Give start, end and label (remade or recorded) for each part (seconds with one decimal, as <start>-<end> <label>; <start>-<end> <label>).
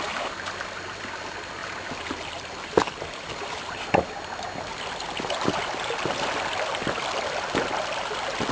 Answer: 0.0-8.5 recorded